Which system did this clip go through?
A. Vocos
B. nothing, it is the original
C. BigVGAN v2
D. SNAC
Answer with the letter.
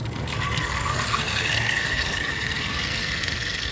D